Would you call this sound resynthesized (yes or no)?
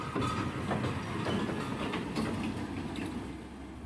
no